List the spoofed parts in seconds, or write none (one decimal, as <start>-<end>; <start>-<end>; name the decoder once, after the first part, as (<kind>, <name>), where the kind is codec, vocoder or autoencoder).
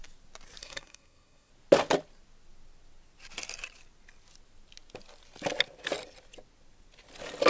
0.6-1.5 (codec, SNAC)